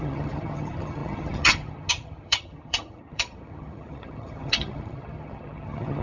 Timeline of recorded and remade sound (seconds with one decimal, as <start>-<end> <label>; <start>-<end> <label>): 0.0-6.0 remade